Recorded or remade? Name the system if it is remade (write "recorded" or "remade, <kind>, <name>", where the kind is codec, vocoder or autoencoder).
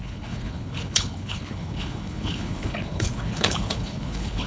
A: remade, codec, HILCodec